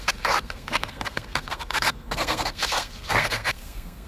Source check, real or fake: fake